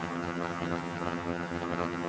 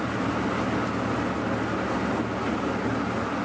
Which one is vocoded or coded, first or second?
first